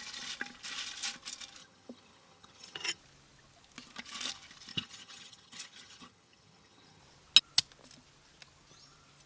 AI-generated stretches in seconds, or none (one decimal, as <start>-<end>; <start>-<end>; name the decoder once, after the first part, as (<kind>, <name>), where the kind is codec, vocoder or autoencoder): 1.6-3.0 (vocoder, HiFi-GAN); 4.7-7.0